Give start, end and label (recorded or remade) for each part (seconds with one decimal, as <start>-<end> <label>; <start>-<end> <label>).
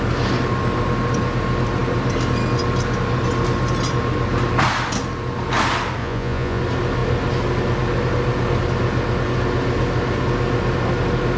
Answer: 0.0-6.0 recorded; 6.0-6.6 remade; 6.6-11.4 recorded